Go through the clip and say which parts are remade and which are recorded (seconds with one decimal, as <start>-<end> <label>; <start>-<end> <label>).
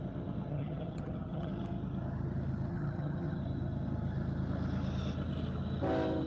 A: 0.0-0.5 recorded; 0.5-1.5 remade; 1.5-2.7 recorded; 2.7-3.4 remade; 3.4-6.3 recorded